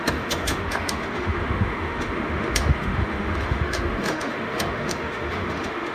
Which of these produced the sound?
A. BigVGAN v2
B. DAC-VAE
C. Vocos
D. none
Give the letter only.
B